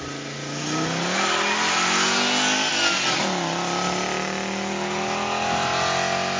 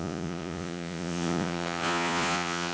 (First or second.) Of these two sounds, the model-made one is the second